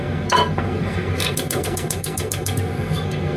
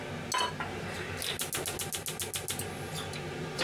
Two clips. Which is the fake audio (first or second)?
first